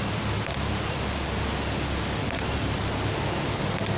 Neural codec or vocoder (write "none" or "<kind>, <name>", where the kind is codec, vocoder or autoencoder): none